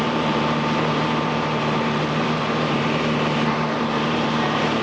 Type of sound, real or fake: fake